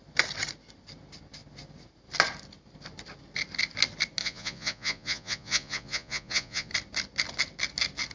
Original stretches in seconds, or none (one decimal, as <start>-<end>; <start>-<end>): 0.0-4.2; 6.7-8.1